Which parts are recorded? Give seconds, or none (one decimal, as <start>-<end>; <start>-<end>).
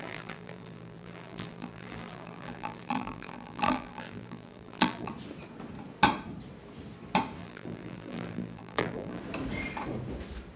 5.1-7.4; 9.2-10.6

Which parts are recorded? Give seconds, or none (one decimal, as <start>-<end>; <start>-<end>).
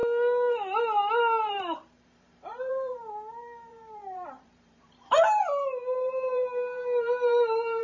0.0-1.5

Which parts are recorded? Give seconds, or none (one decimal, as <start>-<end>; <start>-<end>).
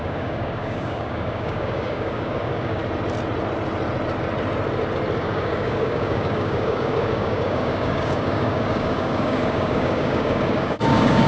2.8-5.2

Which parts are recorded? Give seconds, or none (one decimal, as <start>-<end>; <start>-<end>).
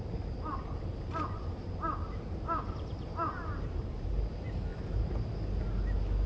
0.0-0.9; 3.8-4.7; 5.3-6.3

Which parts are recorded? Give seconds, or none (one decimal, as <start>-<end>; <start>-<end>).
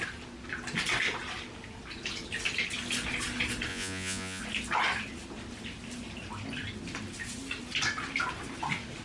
0.0-3.7; 4.4-9.0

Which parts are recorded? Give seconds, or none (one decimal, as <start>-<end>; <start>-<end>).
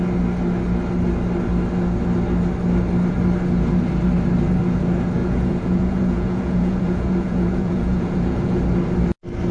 0.0-5.2; 8.6-9.5